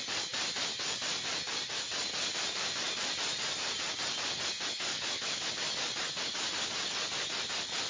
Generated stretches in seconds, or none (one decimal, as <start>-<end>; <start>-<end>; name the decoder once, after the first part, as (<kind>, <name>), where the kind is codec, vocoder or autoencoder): 4.9-5.5 (autoencoder, DAC-VAE)